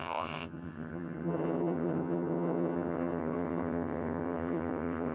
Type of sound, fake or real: fake